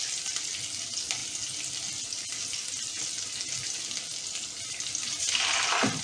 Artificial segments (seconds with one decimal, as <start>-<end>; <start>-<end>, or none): none